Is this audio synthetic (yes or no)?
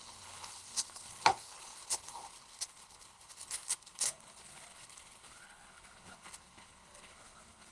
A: yes